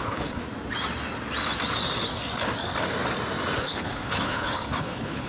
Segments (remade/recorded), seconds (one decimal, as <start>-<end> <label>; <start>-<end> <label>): 0.0-0.4 remade; 0.4-3.6 recorded; 3.6-5.3 remade